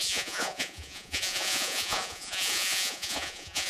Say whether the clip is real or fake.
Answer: fake